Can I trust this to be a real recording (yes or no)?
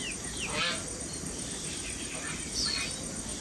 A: yes